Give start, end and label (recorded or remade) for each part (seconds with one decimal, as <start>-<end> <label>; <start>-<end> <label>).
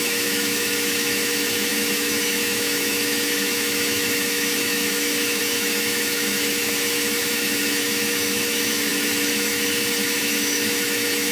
0.0-11.3 remade